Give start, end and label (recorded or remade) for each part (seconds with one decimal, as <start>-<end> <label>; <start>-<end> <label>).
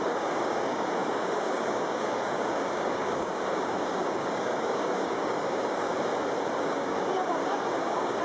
0.0-5.9 remade; 5.9-6.6 recorded; 6.6-8.2 remade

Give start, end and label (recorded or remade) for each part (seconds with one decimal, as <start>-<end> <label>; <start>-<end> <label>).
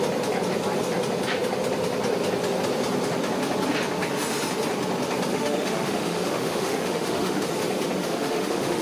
0.0-5.3 recorded; 5.3-7.4 remade; 7.4-8.0 recorded; 8.0-8.8 remade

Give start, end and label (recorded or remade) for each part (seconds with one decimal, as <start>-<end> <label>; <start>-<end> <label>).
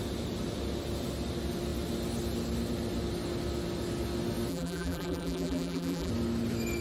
0.0-4.5 recorded; 4.5-6.1 remade; 6.1-6.8 recorded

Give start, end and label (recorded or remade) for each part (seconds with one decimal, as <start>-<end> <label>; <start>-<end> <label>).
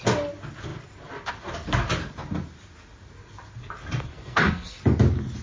0.0-4.1 recorded; 4.1-4.8 remade; 4.8-5.4 recorded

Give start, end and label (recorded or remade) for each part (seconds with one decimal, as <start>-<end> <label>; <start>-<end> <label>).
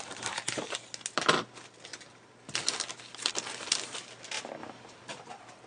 0.0-5.7 recorded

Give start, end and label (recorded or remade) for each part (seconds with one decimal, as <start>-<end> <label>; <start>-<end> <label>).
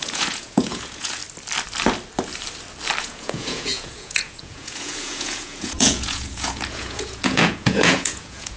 0.0-1.2 remade; 1.2-3.0 recorded; 3.0-8.6 remade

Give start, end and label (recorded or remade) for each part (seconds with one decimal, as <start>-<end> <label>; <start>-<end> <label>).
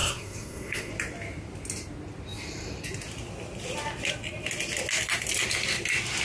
0.0-0.9 remade; 0.9-6.2 recorded